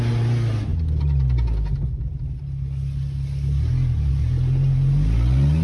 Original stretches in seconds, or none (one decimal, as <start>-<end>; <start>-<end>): 0.0-5.6